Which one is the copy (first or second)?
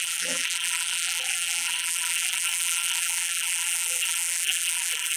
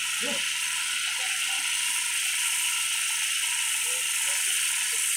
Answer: first